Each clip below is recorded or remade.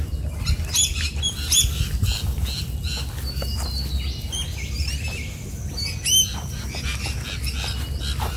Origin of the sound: recorded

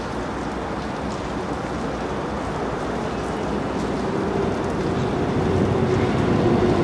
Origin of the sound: recorded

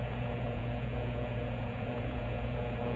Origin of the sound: remade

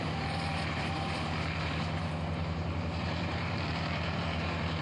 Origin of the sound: remade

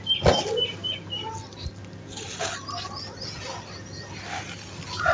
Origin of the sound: recorded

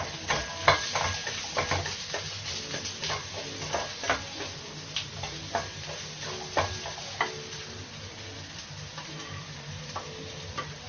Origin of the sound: recorded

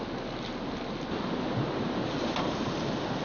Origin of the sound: recorded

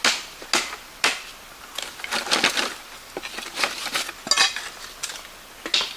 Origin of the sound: recorded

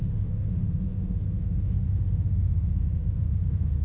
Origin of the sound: remade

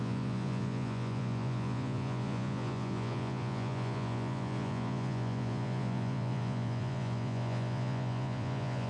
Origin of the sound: remade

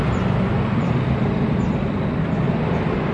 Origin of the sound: remade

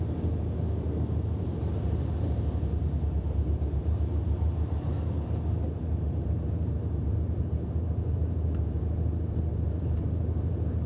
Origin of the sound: remade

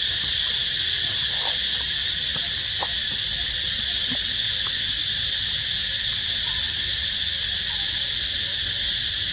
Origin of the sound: remade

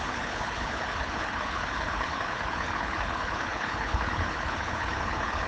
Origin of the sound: remade